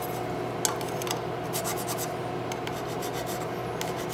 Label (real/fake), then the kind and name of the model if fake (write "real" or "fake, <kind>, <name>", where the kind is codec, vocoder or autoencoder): real